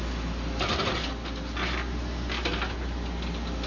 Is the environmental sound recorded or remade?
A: recorded